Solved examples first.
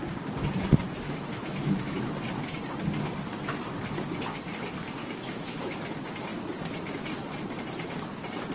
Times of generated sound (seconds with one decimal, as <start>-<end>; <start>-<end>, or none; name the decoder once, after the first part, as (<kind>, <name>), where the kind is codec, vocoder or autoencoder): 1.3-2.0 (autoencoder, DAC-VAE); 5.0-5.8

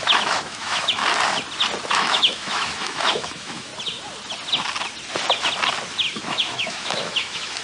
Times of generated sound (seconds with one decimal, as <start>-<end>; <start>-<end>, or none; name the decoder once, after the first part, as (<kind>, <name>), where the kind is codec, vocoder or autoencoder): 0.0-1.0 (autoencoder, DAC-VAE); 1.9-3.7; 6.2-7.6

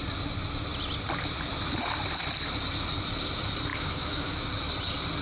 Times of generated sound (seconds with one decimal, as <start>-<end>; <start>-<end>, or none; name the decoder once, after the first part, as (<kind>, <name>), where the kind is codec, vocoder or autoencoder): 3.7-4.7 (autoencoder, DAC-VAE)

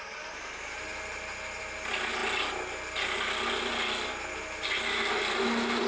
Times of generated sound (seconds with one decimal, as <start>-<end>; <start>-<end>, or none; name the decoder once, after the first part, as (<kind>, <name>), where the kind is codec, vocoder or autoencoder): none

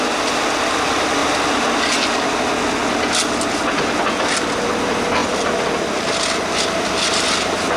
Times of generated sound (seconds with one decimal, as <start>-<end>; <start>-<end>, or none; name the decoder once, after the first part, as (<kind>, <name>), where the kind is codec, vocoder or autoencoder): none

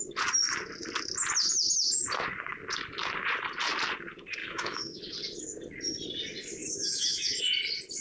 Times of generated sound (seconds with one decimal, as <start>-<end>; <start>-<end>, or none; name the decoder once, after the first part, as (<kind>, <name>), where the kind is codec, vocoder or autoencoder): 4.4-5.0 (autoencoder, DAC-VAE); 6.6-7.4